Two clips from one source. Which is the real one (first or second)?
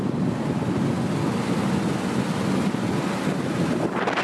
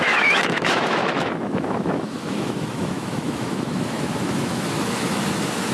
first